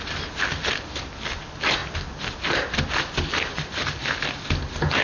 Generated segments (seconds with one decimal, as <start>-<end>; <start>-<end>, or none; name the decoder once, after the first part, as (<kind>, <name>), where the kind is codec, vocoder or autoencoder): none